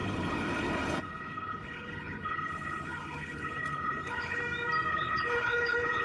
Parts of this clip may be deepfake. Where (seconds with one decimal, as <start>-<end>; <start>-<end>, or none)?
0.0-4.4; 4.9-6.0